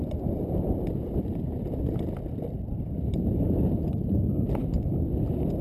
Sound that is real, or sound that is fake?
fake